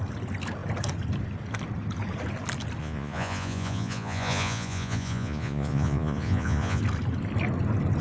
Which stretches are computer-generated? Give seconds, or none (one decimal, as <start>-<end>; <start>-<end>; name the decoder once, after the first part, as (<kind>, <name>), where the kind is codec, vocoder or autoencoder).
2.8-6.8 (vocoder, Vocos)